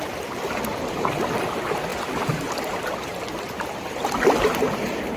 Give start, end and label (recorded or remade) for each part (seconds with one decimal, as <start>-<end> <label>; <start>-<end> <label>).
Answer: 0.0-5.2 recorded